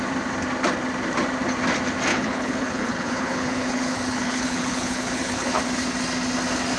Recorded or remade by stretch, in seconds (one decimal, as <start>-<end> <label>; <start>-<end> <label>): 0.0-2.1 recorded; 2.1-5.6 remade; 5.6-6.8 recorded

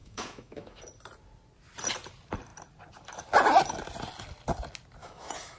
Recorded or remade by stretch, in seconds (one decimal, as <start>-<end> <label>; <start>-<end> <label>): 0.0-0.8 remade; 0.8-5.0 recorded; 5.0-5.6 remade